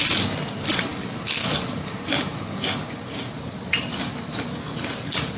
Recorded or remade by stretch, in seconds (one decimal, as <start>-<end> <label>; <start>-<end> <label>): 0.0-5.4 recorded